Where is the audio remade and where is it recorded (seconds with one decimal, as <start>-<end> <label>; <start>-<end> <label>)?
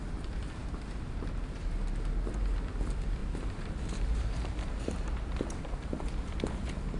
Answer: 0.0-3.2 recorded; 3.2-6.1 remade; 6.1-7.0 recorded